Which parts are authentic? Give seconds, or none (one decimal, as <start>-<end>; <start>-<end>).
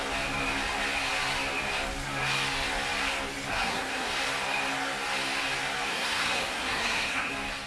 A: 0.0-3.5; 4.1-5.9; 7.3-7.7